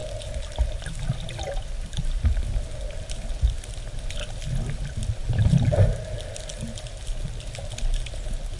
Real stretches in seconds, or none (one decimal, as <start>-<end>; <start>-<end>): 0.0-8.6